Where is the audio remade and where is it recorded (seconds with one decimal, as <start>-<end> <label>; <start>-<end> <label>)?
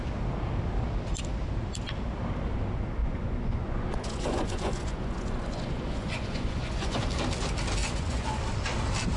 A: 0.0-3.0 recorded; 3.0-7.0 remade; 7.0-7.8 recorded; 7.8-8.4 remade; 8.4-9.2 recorded